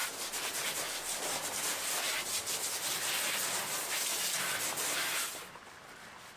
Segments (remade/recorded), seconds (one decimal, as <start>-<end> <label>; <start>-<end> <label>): 0.0-6.4 recorded